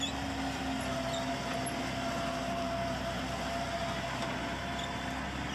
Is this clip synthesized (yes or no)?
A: no